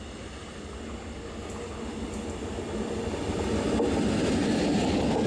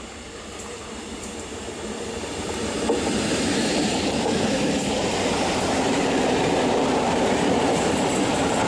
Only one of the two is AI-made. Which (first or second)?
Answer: second